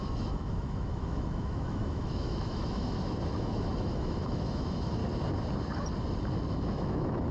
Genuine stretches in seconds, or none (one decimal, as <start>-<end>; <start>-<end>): 5.0-6.5